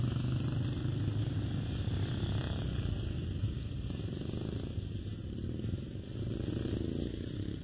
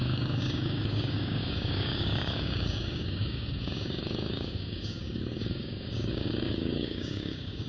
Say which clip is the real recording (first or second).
first